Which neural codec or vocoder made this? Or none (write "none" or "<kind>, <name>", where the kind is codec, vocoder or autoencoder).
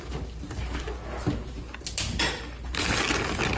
none